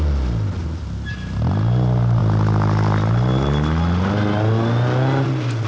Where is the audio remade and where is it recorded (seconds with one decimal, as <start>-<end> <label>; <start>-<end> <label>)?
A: 0.0-5.7 recorded